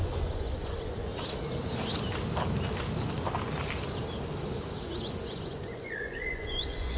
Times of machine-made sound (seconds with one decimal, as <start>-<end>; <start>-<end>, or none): 0.0-1.1; 4.8-7.0